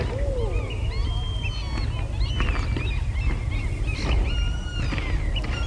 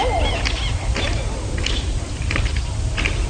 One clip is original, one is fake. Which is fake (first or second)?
second